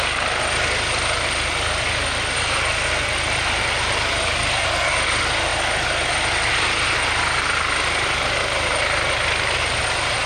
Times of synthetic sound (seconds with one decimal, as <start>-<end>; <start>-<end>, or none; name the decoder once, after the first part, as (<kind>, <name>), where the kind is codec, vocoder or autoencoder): 4.4-4.9 (codec, DAC)